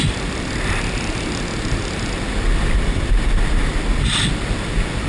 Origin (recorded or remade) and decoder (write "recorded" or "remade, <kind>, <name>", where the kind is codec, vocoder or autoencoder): recorded